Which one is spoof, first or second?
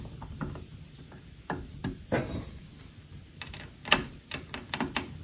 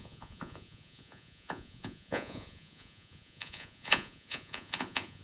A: second